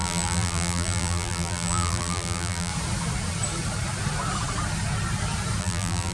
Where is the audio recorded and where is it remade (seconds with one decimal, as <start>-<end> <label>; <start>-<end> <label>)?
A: 0.0-2.7 remade; 2.7-5.6 recorded; 5.6-6.1 remade